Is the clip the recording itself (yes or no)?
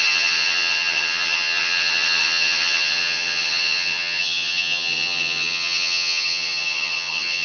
no